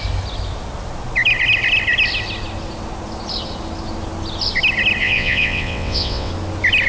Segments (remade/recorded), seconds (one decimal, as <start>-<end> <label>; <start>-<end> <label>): 0.0-5.0 recorded; 5.0-6.3 remade; 6.3-6.9 recorded